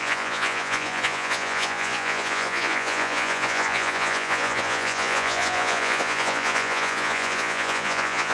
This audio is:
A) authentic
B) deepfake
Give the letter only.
B